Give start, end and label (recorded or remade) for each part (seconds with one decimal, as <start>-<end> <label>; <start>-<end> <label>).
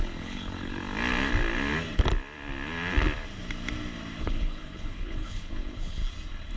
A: 0.0-0.8 remade; 0.8-4.2 recorded; 4.2-6.0 remade; 6.0-6.6 recorded